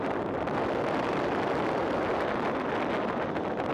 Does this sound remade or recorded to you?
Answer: recorded